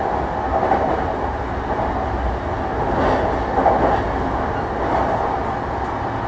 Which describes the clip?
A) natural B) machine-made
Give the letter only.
A